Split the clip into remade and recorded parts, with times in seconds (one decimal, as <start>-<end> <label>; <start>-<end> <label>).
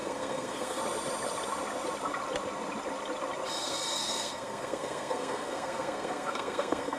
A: 0.0-0.8 remade; 0.8-3.6 recorded; 3.6-7.0 remade